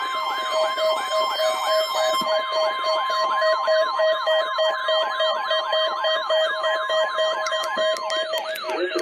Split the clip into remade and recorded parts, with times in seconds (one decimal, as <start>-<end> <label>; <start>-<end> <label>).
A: 0.0-4.8 remade; 4.8-5.6 recorded; 5.6-7.8 remade; 7.8-8.5 recorded; 8.5-9.0 remade

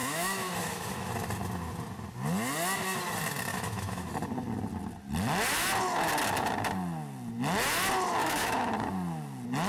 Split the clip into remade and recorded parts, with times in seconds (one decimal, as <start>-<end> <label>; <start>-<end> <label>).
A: 0.0-1.1 remade; 1.1-3.5 recorded; 3.5-4.1 remade; 4.1-8.2 recorded; 8.2-8.7 remade; 8.7-9.7 recorded

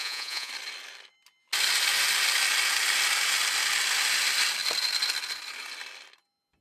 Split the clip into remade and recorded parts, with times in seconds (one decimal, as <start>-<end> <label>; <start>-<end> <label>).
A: 0.0-0.5 remade; 0.5-6.6 recorded

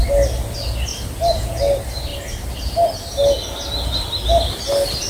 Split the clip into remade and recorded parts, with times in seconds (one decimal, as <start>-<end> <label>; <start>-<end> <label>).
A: 0.0-0.9 recorded; 0.9-1.5 remade; 1.5-5.1 recorded

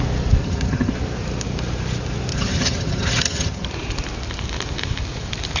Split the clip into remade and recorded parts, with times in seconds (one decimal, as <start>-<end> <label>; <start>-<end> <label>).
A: 0.0-0.4 recorded; 0.4-0.9 remade; 0.9-2.3 recorded; 2.3-3.7 remade; 3.7-5.6 recorded

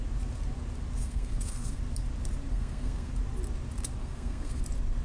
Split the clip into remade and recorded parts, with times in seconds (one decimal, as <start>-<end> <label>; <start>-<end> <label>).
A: 0.0-1.0 recorded; 1.0-1.8 remade; 1.8-2.5 recorded; 2.5-3.1 remade; 3.1-4.0 recorded; 4.0-4.6 remade; 4.6-5.0 recorded